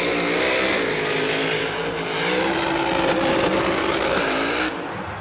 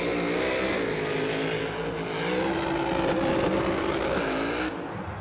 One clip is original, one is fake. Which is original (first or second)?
second